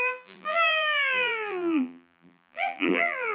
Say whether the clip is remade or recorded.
remade